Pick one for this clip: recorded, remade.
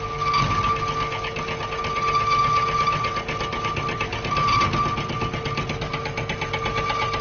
recorded